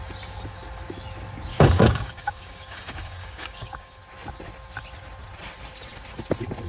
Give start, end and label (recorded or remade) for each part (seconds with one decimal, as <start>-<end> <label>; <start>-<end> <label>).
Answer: 0.0-1.5 recorded; 1.5-4.0 remade; 4.0-6.7 recorded

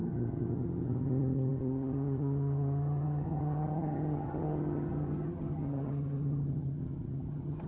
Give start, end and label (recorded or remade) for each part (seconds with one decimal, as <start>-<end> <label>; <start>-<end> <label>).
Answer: 0.0-7.7 remade

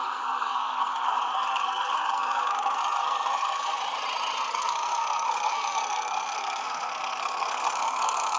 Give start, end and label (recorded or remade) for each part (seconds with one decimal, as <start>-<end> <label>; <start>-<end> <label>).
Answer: 0.0-3.8 remade; 3.8-4.5 recorded; 4.5-8.4 remade

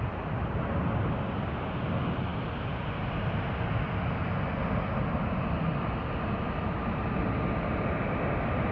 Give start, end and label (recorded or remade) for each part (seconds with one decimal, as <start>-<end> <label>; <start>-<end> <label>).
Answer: 0.0-8.7 recorded

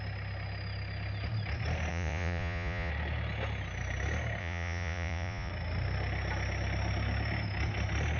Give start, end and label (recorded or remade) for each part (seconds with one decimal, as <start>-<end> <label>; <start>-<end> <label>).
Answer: 0.0-1.9 recorded; 1.9-2.9 remade; 2.9-4.4 recorded; 4.4-5.5 remade; 5.5-8.2 recorded

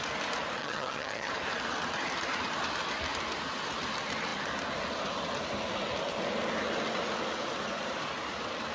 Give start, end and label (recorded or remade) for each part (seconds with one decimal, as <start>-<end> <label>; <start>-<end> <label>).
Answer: 0.0-0.6 recorded; 0.6-1.3 remade; 1.3-8.7 recorded

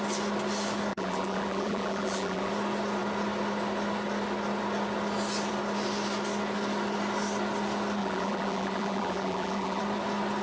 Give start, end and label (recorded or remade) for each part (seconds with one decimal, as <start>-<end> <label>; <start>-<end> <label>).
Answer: 0.0-0.9 recorded; 0.9-2.5 remade; 2.5-8.0 recorded; 8.0-9.8 remade; 9.8-10.4 recorded